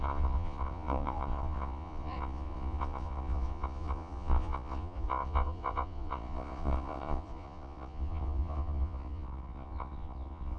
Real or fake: fake